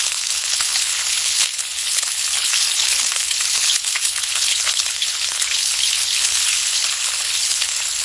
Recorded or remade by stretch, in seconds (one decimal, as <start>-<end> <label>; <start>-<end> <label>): 0.0-8.0 remade